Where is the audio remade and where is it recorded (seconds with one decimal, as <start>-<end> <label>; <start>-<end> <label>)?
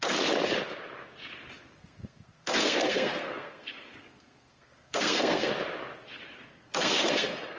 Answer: 0.0-1.8 recorded; 1.8-5.5 remade; 5.5-6.5 recorded; 6.5-7.6 remade